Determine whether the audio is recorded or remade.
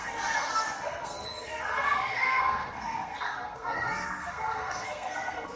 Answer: remade